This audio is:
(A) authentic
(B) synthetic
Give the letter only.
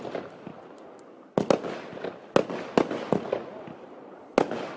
A